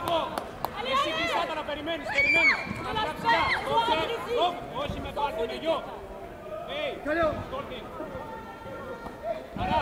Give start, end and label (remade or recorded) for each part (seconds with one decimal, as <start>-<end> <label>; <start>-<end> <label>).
0.0-9.8 recorded

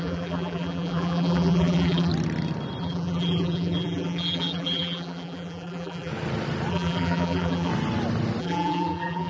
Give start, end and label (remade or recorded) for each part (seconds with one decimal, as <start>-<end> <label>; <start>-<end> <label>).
0.0-2.1 remade; 2.1-2.8 recorded; 2.8-6.1 remade; 6.1-6.7 recorded; 6.7-7.7 remade; 7.7-8.4 recorded; 8.4-9.3 remade